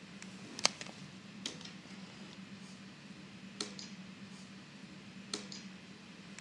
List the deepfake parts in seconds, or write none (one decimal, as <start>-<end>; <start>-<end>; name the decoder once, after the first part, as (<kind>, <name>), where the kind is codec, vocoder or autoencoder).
none